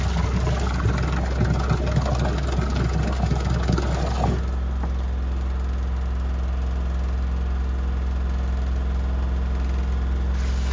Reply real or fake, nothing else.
real